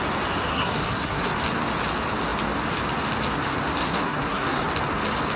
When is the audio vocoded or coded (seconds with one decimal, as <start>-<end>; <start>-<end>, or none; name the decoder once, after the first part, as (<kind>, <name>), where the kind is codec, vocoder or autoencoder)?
0.5-1.3 (codec, SNAC); 3.8-4.6